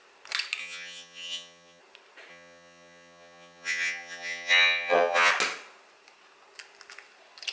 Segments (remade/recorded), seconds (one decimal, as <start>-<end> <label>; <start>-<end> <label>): 0.0-0.6 recorded; 0.6-1.8 remade; 1.8-2.3 recorded; 2.3-5.3 remade; 5.3-7.5 recorded